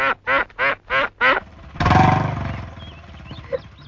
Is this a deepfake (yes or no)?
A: no